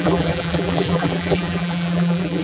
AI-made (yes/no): yes